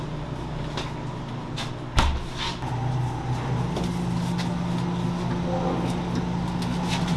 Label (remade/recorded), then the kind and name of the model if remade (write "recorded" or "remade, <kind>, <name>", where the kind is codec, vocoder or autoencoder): recorded